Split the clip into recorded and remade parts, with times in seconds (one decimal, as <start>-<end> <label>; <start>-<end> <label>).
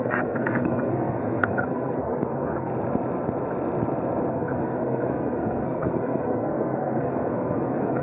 0.0-2.7 remade; 2.7-4.3 recorded; 4.3-8.0 remade